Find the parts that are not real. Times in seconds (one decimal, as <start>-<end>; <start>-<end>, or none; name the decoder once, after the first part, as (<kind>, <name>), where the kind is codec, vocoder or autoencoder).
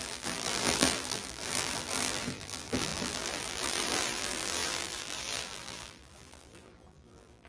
0.0-7.5 (vocoder, BigVGAN v2)